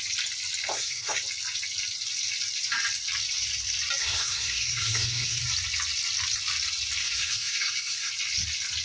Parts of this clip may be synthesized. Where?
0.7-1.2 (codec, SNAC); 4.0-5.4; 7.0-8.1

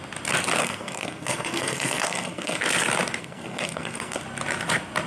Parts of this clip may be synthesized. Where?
0.6-2.6 (codec, SNAC); 3.2-4.2